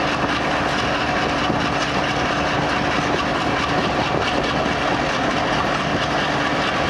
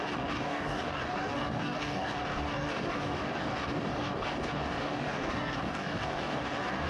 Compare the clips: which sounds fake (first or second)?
second